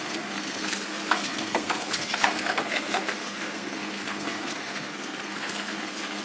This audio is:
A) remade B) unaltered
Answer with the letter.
A